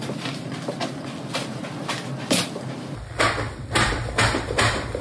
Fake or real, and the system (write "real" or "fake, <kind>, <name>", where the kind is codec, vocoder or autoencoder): real